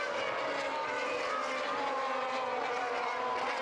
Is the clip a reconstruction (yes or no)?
no